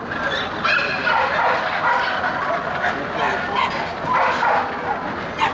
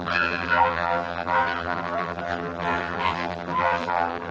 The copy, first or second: second